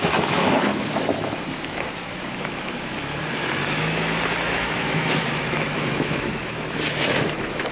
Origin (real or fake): fake